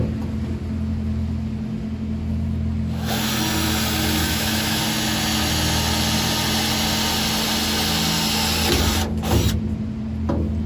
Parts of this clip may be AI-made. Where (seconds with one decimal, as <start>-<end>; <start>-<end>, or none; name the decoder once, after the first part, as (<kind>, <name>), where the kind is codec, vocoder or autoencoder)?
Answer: 4.2-4.8 (autoencoder, DAC-VAE)